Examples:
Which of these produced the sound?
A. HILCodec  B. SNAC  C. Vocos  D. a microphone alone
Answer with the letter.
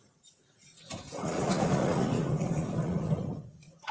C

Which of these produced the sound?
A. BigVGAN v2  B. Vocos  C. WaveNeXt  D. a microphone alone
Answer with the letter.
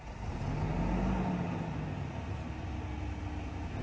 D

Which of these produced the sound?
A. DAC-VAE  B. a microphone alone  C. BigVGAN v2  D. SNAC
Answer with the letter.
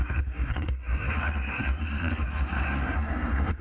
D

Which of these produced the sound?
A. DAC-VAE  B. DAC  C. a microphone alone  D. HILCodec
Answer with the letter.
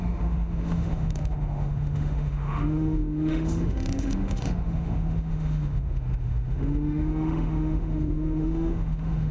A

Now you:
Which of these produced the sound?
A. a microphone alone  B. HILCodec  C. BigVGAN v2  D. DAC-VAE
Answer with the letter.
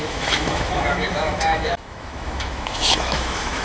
D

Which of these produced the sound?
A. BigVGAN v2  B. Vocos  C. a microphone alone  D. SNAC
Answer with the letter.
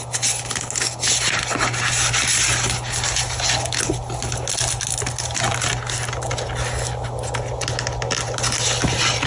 C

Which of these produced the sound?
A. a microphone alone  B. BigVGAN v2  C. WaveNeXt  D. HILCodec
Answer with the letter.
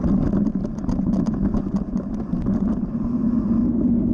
A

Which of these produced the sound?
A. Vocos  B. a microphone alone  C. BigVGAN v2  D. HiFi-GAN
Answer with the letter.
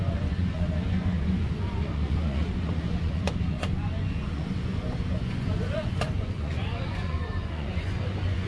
A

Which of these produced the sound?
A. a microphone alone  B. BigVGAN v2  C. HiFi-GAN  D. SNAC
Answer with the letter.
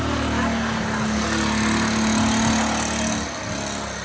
A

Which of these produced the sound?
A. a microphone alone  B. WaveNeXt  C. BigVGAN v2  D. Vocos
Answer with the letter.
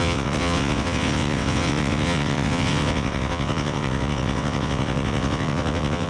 B